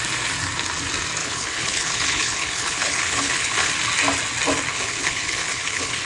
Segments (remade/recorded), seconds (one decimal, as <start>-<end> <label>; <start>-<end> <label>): 0.0-1.2 recorded; 1.2-3.7 remade; 3.7-4.7 recorded; 4.7-6.1 remade